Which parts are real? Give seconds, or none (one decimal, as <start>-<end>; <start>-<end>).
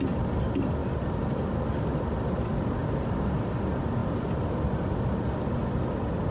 0.0-0.8; 1.6-2.8; 3.5-6.3